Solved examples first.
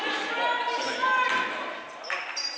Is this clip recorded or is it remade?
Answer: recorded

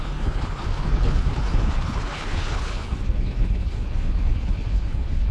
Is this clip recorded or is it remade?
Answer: remade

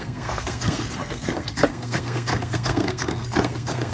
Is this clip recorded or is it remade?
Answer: remade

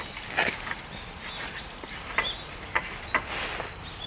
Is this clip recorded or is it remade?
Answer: recorded